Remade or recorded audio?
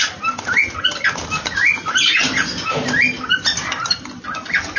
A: recorded